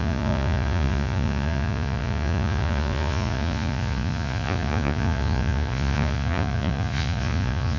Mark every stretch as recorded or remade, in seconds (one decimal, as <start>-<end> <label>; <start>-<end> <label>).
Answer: 0.0-7.8 remade